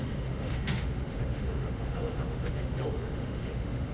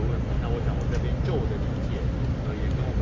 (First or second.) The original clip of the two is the second